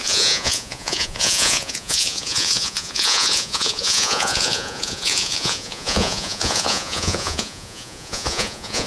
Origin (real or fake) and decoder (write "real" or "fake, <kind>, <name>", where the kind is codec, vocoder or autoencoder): fake, vocoder, Vocos